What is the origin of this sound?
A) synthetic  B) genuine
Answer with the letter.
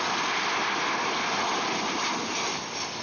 B